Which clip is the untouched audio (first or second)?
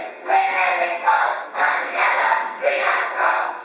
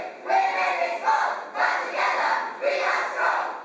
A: second